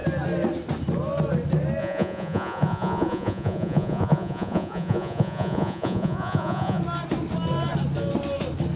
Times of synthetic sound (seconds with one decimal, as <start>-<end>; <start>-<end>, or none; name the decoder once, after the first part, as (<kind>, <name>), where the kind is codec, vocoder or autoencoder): 1.8-6.8 (vocoder, Vocos)